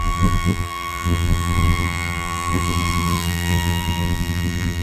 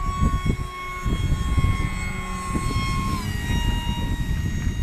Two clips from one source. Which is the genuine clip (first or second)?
second